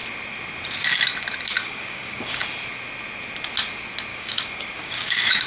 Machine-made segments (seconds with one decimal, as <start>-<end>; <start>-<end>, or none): 1.6-2.4; 4.1-5.5